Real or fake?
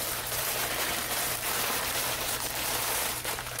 fake